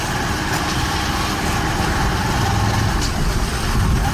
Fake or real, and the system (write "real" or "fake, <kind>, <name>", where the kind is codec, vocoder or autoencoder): real